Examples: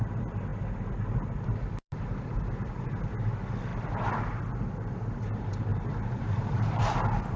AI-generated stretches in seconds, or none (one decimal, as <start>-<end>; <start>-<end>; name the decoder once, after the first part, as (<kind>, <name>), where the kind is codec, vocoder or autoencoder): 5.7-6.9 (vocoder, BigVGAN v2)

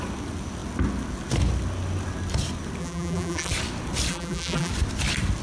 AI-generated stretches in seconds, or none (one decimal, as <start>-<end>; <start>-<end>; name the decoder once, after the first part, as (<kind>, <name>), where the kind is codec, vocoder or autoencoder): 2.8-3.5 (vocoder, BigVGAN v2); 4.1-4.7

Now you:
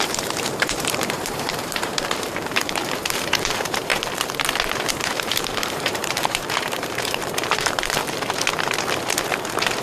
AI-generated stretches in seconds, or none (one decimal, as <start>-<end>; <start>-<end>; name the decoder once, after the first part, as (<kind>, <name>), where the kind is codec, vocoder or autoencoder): 0.0-3.9 (vocoder, BigVGAN v2); 4.9-8.0; 9.2-9.8